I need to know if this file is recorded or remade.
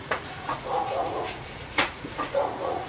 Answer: remade